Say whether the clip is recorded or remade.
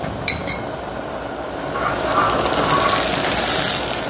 recorded